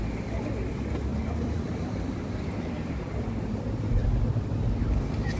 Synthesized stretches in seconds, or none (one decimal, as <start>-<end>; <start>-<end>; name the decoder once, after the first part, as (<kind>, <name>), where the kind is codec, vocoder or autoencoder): 1.1-4.3 (vocoder, BigVGAN v2)